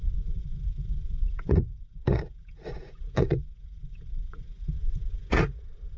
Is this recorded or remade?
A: remade